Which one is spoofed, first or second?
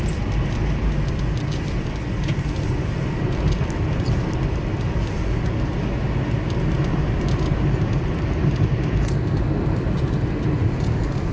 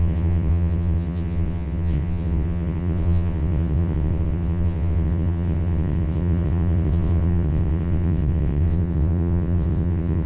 second